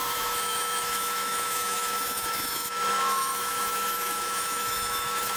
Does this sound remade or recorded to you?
remade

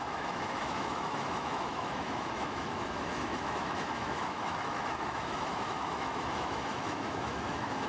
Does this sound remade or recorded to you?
remade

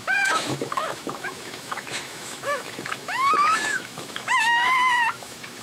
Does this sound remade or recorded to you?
remade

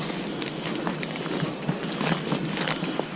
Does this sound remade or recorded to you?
recorded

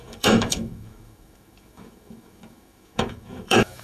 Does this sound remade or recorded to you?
remade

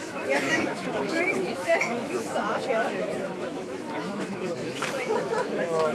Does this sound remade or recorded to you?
remade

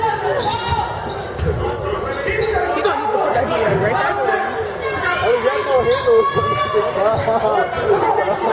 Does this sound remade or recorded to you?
recorded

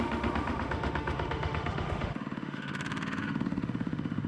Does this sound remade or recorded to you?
remade